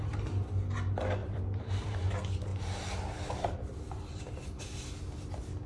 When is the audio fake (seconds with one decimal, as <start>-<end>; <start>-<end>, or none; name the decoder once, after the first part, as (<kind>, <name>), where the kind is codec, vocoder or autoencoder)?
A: 1.2-1.9 (vocoder, BigVGAN v2); 2.5-4.6